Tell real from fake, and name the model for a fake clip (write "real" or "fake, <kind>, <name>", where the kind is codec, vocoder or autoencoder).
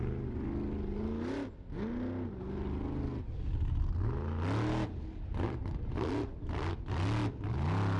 real